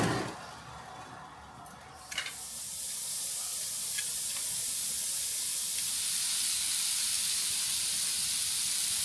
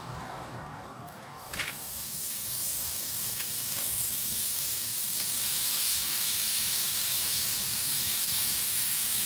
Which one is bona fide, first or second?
first